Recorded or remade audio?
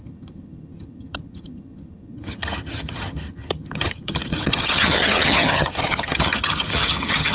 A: remade